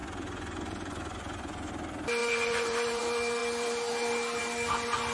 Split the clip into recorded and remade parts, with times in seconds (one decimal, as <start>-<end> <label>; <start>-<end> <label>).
0.0-1.7 remade; 1.7-2.2 recorded; 2.2-3.0 remade; 3.0-5.1 recorded